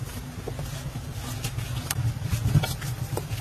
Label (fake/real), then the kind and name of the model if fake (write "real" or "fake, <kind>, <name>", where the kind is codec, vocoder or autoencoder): real